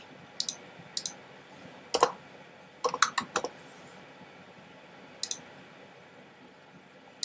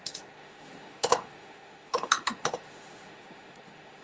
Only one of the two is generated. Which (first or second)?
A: second